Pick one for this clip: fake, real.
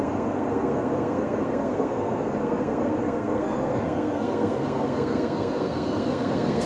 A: fake